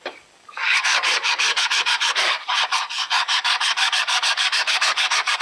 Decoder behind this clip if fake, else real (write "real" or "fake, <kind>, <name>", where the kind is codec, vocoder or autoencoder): fake, codec, DAC